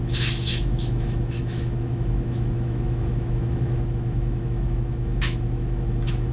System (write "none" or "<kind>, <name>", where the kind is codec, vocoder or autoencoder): autoencoder, DAC-VAE